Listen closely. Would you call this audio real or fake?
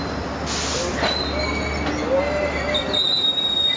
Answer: real